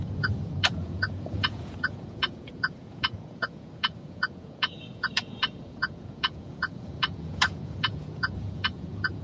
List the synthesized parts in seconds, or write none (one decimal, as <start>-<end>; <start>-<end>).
0.0-9.2